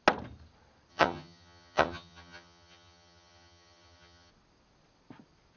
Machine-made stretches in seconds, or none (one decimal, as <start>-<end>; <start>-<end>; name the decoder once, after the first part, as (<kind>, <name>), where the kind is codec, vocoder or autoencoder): 0.9-4.3 (vocoder, HiFi-GAN)